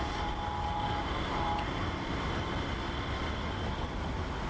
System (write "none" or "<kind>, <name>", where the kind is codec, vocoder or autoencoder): none